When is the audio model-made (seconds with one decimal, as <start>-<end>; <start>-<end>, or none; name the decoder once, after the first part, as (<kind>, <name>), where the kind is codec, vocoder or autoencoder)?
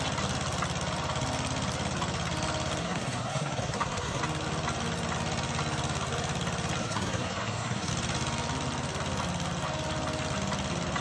2.8-4.2 (codec, SNAC); 6.8-7.9